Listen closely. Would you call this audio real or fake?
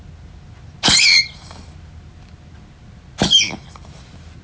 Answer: real